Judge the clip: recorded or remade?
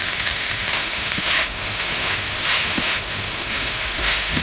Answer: remade